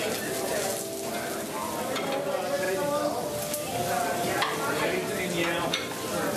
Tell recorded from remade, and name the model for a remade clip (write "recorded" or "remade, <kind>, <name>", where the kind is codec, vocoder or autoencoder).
recorded